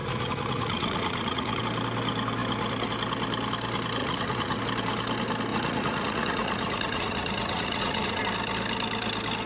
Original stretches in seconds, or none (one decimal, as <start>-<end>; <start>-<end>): 1.6-4.0; 4.6-5.5; 8.2-9.5